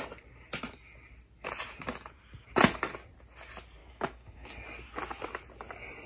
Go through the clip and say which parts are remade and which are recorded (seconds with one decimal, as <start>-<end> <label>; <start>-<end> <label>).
0.0-3.8 recorded; 3.8-4.5 remade; 4.5-6.1 recorded